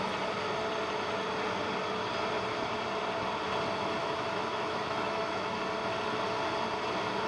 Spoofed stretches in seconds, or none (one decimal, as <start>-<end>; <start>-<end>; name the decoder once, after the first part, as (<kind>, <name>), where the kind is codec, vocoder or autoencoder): 4.0-5.6 (autoencoder, DAC-VAE)